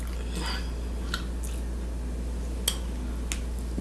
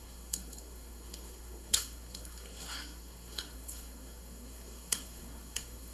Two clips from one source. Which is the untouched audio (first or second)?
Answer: first